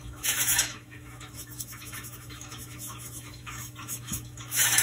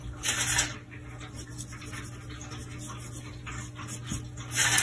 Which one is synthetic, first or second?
first